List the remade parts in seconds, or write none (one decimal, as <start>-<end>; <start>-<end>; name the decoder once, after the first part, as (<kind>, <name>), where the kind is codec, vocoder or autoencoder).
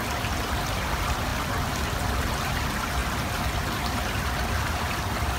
none